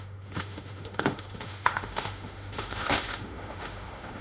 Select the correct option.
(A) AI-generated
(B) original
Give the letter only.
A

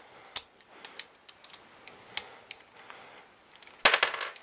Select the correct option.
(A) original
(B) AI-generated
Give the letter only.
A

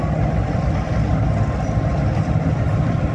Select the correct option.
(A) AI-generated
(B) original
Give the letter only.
B